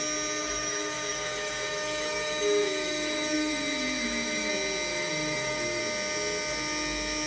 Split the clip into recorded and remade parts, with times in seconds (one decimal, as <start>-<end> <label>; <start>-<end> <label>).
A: 0.0-0.4 recorded; 0.4-4.5 remade; 4.5-4.9 recorded; 4.9-5.8 remade; 5.8-7.3 recorded